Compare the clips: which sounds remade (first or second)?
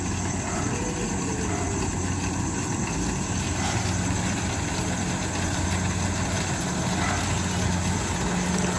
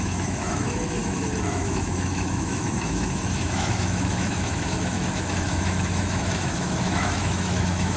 second